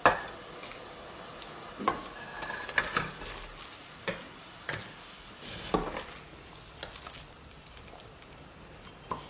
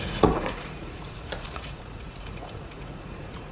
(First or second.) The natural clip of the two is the first